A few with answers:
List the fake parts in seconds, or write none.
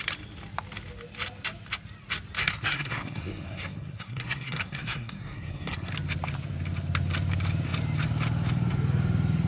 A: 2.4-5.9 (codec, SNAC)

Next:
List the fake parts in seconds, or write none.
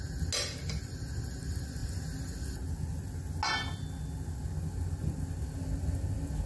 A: none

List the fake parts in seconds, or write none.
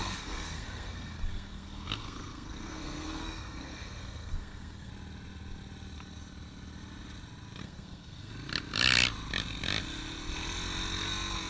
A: 0.0-4.9 (codec, SNAC); 7.6-8.3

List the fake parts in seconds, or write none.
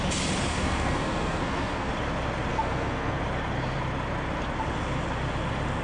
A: 0.5-1.9 (codec, SNAC); 2.5-3.2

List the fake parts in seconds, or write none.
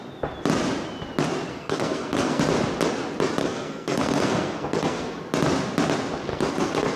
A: 1.5-2.4 (codec, SNAC); 3.4-5.2; 6.3-7.0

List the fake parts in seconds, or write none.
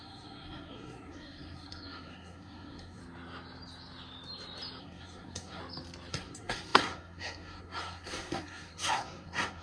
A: 0.0-3.0 (codec, SNAC); 4.8-5.6; 6.1-9.6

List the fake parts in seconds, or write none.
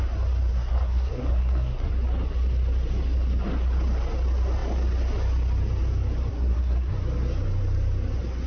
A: 0.5-1.9 (codec, SNAC); 6.3-6.9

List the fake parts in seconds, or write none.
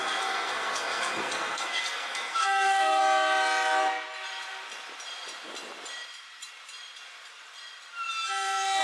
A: 0.0-3.0 (codec, SNAC)